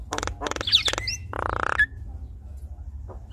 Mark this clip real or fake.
real